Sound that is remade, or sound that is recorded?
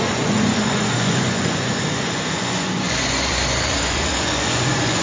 remade